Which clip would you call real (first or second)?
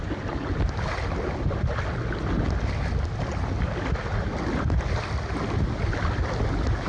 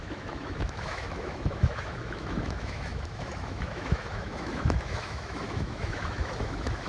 first